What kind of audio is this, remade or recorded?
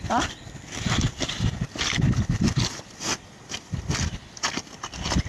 recorded